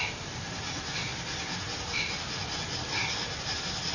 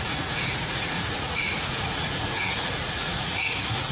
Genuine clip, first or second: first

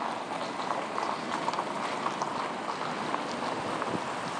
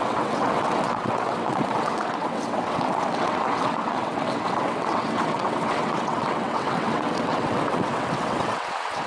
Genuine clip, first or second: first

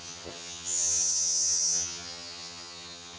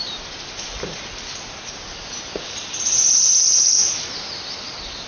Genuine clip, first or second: second